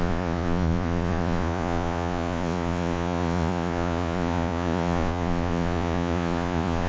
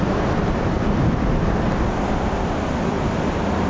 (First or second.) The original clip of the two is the second